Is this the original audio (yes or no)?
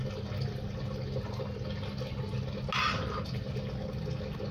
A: yes